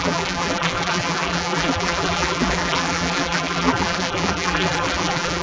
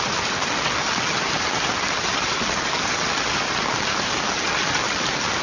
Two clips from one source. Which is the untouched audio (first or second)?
second